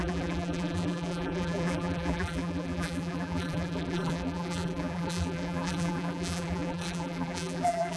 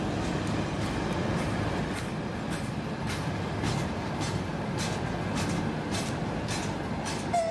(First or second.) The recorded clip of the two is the second